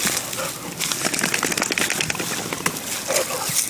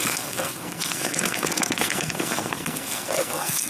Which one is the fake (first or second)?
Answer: second